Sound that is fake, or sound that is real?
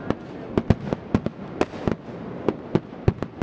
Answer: real